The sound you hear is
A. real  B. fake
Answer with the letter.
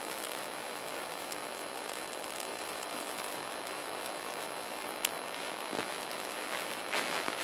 B